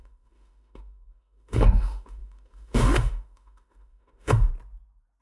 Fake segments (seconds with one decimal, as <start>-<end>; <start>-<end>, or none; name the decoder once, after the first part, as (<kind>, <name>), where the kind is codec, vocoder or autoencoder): 0.0-4.5 (autoencoder, DAC-VAE)